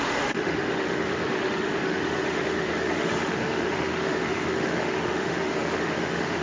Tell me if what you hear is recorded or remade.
remade